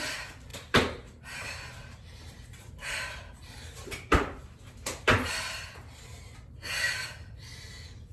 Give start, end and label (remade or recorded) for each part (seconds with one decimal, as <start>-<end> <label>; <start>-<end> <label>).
0.0-0.5 recorded; 0.5-5.3 remade; 5.3-8.1 recorded